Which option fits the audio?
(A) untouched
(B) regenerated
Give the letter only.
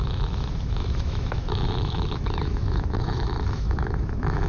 B